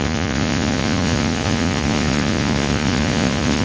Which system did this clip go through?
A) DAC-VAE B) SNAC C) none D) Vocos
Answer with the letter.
D